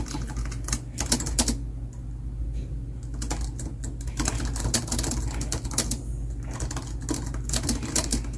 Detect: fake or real real